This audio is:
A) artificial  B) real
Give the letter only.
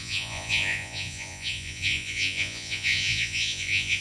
A